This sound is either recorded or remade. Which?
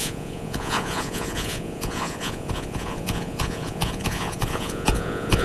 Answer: remade